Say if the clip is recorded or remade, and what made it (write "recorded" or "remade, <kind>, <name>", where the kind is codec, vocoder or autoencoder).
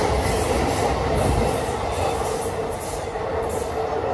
recorded